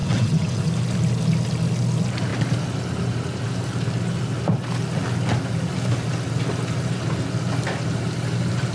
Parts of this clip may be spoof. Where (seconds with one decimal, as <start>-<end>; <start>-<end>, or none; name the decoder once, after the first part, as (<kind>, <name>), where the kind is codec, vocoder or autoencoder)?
0.0-0.7 (vocoder, WaveNeXt)